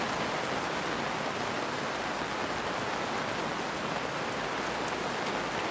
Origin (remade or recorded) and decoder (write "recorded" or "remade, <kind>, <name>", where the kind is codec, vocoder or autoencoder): recorded